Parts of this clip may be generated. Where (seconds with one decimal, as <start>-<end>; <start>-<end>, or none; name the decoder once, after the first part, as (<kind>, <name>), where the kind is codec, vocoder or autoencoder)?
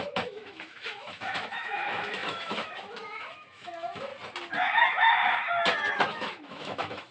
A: 0.0-4.1 (autoencoder, DAC-VAE); 5.9-7.1